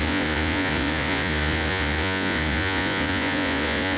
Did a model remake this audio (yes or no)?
yes